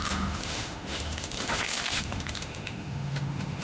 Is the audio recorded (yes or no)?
no